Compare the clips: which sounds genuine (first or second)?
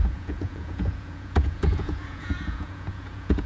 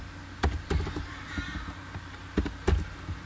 second